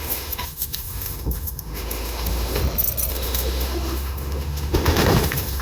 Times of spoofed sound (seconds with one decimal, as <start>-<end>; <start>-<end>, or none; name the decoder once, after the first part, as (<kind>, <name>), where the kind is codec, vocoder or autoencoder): 0.0-2.6 (autoencoder, DAC-VAE); 3.1-5.6